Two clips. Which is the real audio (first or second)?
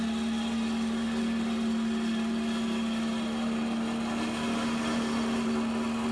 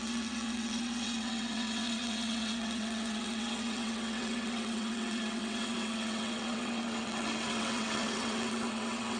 first